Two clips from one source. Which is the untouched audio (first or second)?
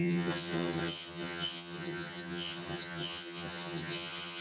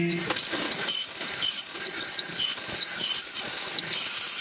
second